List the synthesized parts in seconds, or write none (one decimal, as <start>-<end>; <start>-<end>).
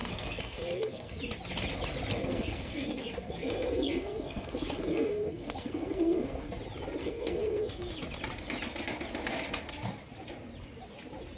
0.0-1.2; 2.1-6.5; 7.0-7.9